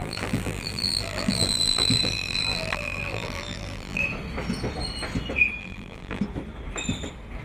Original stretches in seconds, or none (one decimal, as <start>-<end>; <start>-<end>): 4.0-5.6; 6.2-7.4